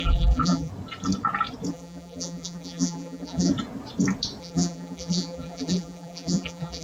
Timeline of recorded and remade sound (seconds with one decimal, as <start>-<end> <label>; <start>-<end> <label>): 0.0-0.7 remade; 0.7-1.7 recorded; 1.7-3.5 remade; 3.5-4.4 recorded; 4.4-6.8 remade